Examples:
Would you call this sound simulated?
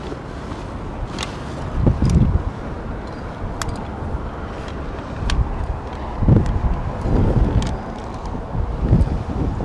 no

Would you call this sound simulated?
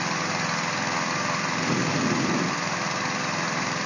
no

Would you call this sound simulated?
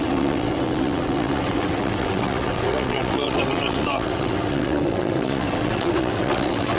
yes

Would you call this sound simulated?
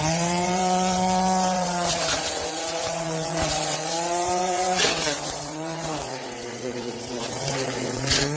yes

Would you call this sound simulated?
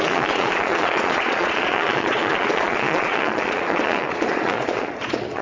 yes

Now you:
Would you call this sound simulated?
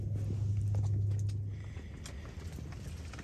no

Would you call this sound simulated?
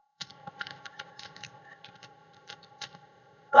yes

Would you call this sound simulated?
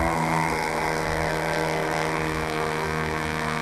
yes